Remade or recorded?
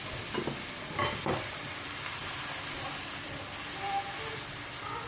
recorded